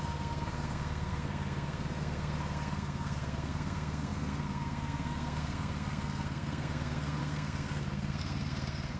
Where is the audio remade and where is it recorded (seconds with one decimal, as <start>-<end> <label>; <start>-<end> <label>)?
0.0-9.0 remade